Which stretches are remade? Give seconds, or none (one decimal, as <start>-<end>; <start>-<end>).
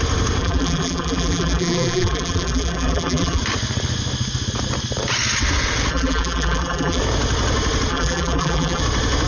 0.4-3.4; 5.9-7.0; 7.9-8.8